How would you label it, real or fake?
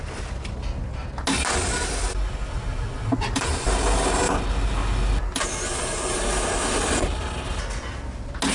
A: real